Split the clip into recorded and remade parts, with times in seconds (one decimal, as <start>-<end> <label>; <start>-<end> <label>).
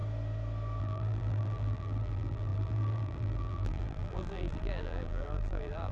0.0-0.8 recorded; 0.8-5.9 remade